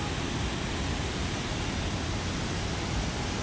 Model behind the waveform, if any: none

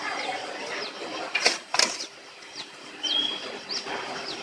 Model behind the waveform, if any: none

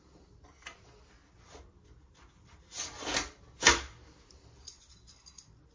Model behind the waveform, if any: none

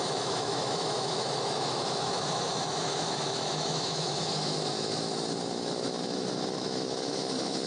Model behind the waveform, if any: autoencoder, DAC-VAE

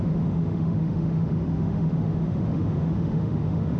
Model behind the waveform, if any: autoencoder, DAC-VAE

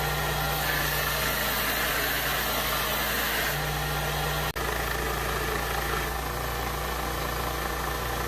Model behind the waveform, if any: none